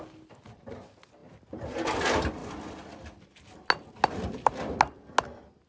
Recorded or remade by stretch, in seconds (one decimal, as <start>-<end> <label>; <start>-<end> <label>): 0.0-5.7 recorded